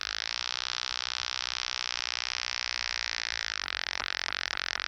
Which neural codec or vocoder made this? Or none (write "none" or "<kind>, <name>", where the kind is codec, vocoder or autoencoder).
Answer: none